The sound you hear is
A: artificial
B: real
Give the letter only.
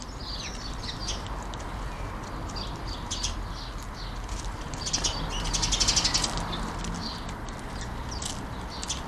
B